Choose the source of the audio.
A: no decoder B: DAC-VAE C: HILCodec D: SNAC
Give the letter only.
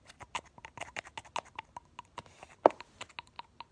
A